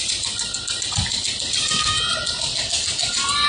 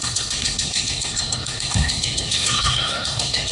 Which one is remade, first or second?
second